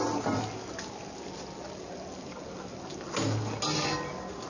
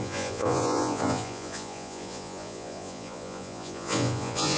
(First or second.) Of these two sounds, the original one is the first